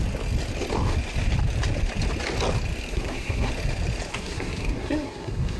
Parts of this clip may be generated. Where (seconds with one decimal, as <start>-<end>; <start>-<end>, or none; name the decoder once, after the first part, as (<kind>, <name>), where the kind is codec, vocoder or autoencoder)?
2.9-3.5 (codec, SNAC); 4.1-5.6